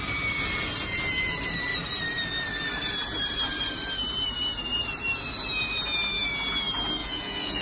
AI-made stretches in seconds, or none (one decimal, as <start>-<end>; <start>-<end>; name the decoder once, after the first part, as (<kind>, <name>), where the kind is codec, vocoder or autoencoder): 7.0-7.6 (vocoder, Vocos)